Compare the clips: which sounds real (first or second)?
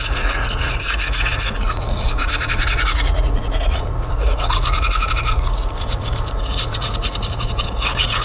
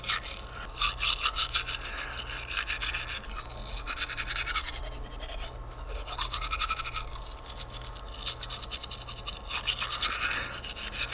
second